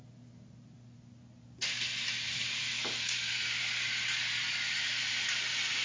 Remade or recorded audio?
recorded